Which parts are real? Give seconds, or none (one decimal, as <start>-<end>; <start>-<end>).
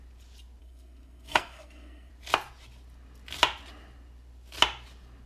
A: 0.0-0.6; 2.1-5.3